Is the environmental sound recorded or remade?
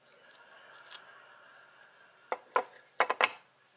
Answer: recorded